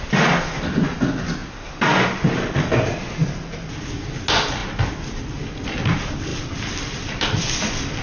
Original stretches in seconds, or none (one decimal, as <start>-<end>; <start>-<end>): 0.0-1.4; 2.8-4.6; 5.2-6.3